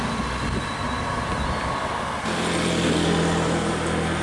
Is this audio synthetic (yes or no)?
no